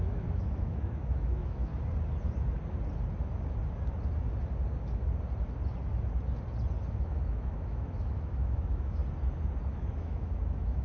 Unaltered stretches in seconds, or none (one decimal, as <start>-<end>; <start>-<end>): 1.7-6.9; 9.0-9.7